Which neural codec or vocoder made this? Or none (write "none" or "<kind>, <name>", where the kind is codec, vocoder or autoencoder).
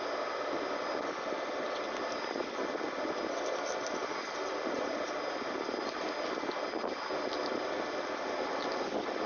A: none